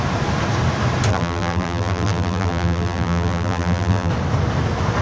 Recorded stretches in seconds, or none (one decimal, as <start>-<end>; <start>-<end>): 0.0-1.1; 4.1-5.0